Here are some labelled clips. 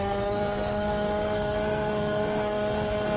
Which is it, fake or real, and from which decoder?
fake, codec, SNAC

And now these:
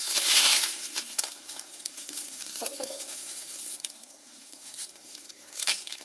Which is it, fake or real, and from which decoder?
fake, codec, SNAC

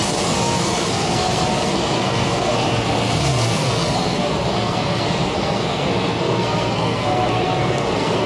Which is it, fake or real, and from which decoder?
fake, codec, SNAC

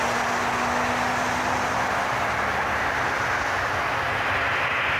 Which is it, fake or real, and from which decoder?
real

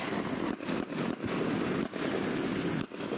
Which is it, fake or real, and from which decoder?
real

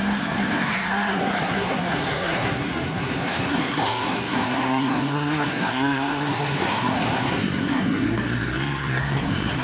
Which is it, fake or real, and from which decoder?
fake, codec, SNAC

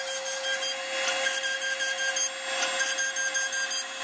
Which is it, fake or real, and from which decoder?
real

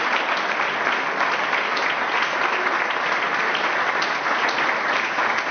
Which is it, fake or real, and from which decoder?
real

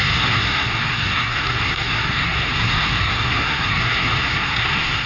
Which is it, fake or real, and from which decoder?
fake, codec, SNAC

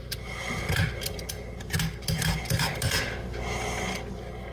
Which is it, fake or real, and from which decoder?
real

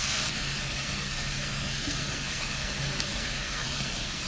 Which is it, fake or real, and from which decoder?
fake, codec, SNAC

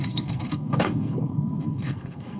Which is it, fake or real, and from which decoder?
fake, codec, SNAC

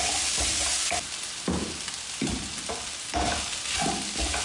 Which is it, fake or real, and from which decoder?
real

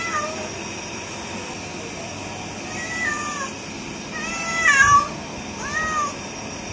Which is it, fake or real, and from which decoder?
real